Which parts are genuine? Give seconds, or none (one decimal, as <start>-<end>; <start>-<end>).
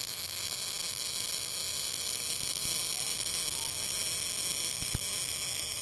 0.0-5.8